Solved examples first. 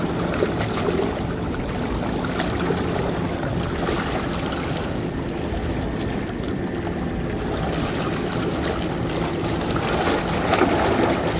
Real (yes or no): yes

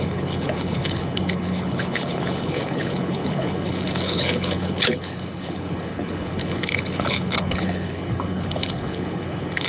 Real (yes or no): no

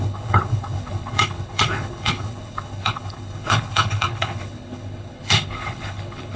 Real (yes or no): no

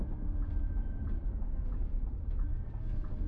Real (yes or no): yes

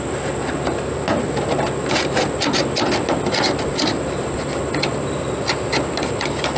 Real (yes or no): yes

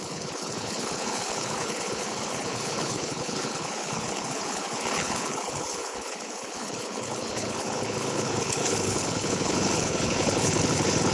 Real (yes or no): no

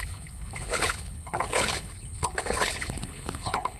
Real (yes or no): no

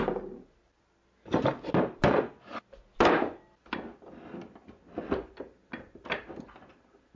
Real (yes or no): yes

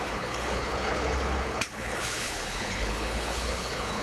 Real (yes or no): no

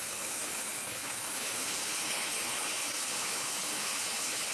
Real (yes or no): no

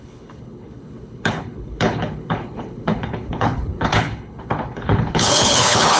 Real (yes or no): no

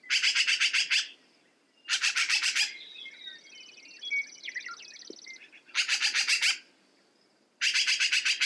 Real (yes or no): yes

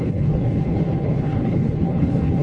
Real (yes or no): no